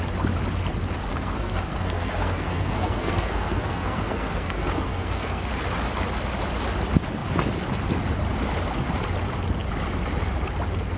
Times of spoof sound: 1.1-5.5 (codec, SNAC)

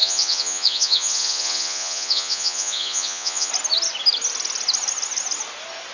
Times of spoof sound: 0.0-3.5 (vocoder, Vocos)

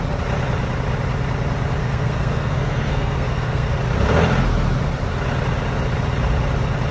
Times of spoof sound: 1.8-3.8 (codec, SNAC)